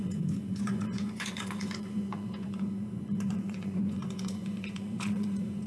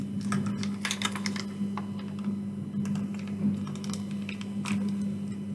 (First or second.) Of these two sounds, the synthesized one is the first